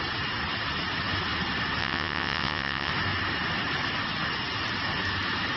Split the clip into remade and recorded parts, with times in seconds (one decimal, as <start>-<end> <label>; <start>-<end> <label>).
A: 0.0-1.8 recorded; 1.8-2.9 remade; 2.9-5.6 recorded